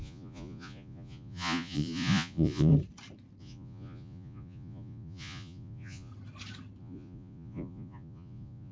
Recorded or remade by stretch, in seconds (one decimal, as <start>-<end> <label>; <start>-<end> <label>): 0.0-2.7 remade; 2.7-3.4 recorded; 3.4-6.1 remade; 6.1-6.8 recorded; 6.8-8.7 remade